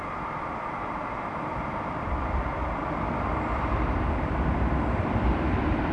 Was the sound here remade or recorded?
remade